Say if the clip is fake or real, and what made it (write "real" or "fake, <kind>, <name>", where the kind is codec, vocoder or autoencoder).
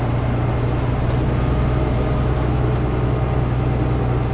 real